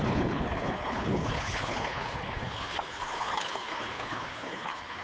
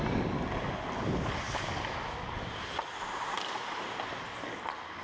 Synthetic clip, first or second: first